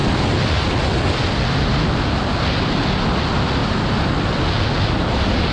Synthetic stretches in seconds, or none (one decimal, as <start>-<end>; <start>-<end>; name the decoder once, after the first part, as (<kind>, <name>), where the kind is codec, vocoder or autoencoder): 3.6-4.5 (vocoder, BigVGAN v2)